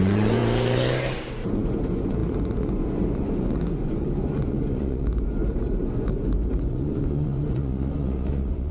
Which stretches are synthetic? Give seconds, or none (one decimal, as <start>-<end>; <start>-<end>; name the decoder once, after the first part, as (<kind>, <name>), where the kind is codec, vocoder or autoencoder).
0.0-0.4 (vocoder, Vocos); 1.3-8.7

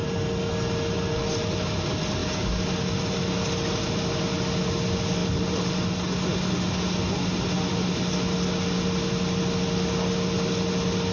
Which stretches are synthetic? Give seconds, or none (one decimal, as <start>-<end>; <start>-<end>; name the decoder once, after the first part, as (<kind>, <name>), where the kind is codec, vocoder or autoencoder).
none

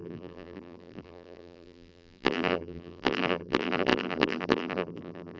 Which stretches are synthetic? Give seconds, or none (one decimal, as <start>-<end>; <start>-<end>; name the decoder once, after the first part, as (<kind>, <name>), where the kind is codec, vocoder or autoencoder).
0.0-5.4 (vocoder, BigVGAN v2)

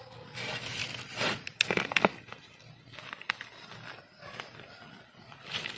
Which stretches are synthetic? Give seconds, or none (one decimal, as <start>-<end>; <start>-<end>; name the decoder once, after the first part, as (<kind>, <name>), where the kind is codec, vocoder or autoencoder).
none

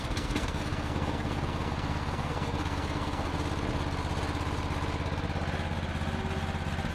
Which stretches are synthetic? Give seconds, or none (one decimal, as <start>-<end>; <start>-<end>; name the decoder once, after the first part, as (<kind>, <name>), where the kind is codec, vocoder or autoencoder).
0.0-3.3 (codec, SNAC)